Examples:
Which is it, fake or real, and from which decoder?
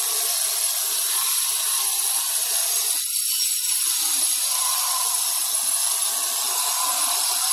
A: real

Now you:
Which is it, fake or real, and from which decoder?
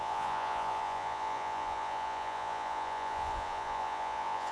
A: fake, vocoder, Vocos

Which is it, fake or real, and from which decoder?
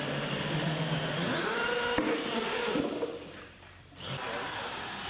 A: real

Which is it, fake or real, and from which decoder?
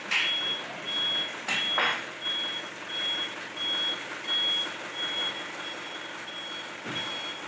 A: real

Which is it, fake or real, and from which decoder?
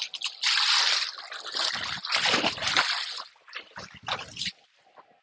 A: real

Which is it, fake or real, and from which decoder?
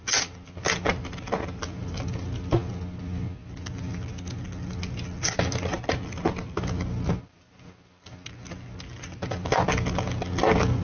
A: real